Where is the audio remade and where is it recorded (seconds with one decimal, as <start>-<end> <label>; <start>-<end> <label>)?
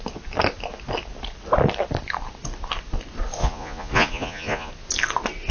0.0-3.4 recorded; 3.4-4.7 remade; 4.7-5.5 recorded